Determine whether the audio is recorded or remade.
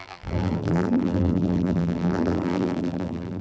remade